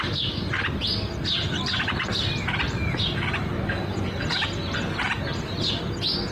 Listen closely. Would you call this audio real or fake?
real